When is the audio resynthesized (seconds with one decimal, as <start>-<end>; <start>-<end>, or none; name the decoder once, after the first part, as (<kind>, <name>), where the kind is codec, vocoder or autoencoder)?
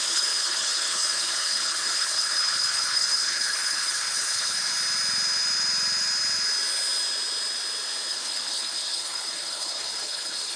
0.0-4.7 (codec, HILCodec); 8.1-10.6